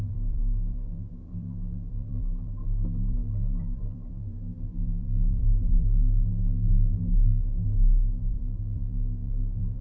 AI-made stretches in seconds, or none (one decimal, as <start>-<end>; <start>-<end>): 0.0-6.0; 8.3-9.8